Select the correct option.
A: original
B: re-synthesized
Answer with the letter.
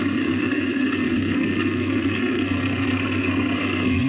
B